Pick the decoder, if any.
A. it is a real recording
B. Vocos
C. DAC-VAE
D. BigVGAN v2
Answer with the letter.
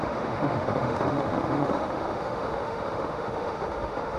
C